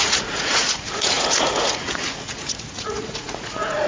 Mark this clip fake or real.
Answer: fake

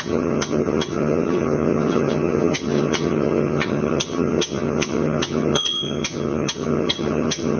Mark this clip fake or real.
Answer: fake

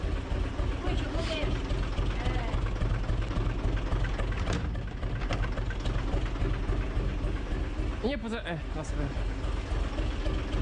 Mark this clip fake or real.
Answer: real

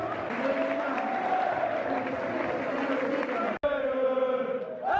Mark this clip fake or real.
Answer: real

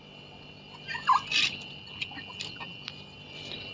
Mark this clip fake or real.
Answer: real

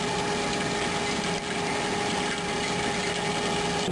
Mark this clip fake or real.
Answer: fake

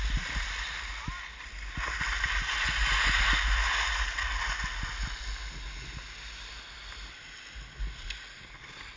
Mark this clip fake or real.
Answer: real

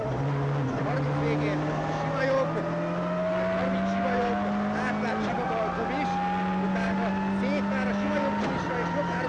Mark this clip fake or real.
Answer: real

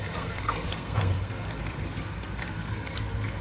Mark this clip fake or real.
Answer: fake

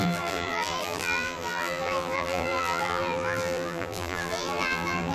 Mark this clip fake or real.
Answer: fake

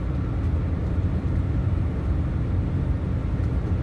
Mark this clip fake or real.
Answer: real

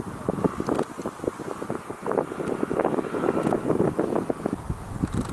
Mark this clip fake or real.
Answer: real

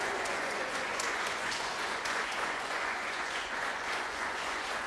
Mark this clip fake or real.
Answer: fake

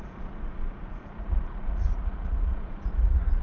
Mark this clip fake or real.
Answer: fake